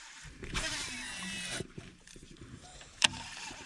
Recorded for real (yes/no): no